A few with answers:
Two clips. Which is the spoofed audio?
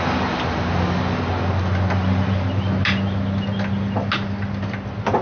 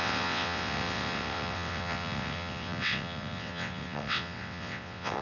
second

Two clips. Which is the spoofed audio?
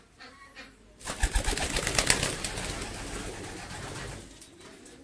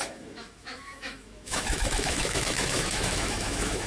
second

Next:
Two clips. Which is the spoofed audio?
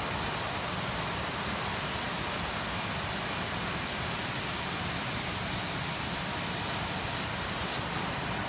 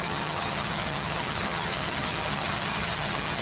second